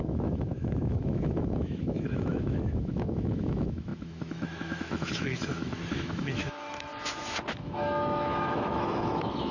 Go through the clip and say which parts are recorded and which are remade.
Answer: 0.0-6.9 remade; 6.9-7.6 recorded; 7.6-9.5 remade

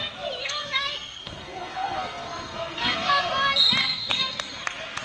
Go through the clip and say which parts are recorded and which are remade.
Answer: 0.0-0.4 recorded; 0.4-3.3 remade; 3.3-3.8 recorded; 3.8-4.6 remade; 4.6-5.0 recorded